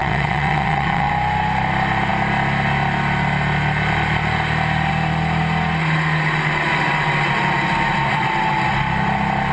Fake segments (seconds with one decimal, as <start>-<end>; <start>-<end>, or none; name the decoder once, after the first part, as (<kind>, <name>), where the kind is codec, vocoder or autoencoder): 0.0-1.1 (vocoder, WaveNeXt)